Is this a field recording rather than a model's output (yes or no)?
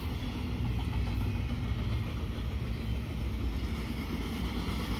yes